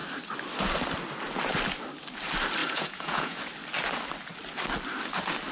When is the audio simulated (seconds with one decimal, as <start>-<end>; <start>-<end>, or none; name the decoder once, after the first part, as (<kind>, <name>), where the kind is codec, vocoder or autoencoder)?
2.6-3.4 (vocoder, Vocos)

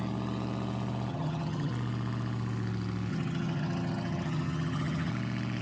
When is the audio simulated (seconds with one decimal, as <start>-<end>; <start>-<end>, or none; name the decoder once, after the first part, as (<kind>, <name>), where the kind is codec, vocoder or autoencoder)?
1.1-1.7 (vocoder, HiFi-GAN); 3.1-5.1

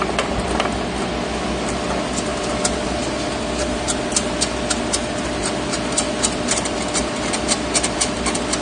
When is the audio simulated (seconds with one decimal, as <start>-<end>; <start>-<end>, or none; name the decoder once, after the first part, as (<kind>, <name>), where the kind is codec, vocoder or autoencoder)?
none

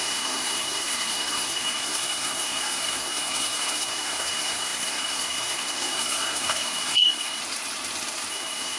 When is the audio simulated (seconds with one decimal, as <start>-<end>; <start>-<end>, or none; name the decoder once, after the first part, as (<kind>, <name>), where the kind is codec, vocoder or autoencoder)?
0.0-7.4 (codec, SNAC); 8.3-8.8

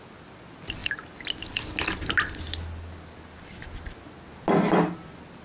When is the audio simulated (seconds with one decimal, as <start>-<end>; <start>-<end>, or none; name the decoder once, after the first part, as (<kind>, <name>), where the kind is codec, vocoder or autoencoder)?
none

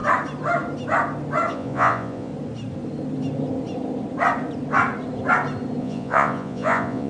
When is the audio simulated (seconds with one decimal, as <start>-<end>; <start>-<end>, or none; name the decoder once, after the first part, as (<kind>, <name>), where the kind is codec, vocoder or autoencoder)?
1.5-2.3 (vocoder, Vocos); 5.8-7.1

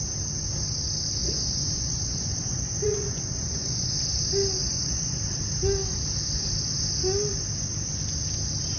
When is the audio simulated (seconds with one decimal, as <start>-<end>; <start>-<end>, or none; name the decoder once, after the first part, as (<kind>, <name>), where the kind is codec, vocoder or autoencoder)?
1.2-3.9 (vocoder, Vocos); 4.6-5.2

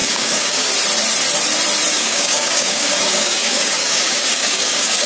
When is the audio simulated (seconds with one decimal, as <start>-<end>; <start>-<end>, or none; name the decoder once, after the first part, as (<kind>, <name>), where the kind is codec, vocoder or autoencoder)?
0.0-0.7 (codec, DAC); 1.9-5.1